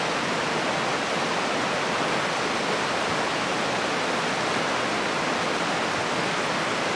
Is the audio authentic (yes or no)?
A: yes